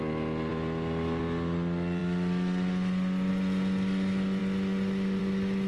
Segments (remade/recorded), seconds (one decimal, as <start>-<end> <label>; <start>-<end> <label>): 0.0-5.7 recorded